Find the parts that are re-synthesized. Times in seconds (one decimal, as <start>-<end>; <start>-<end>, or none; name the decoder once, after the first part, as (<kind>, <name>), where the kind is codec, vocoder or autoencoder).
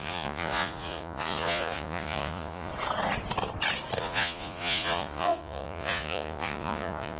0.0-2.7 (vocoder, Vocos); 4.0-7.2